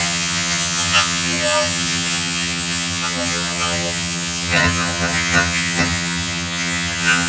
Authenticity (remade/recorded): remade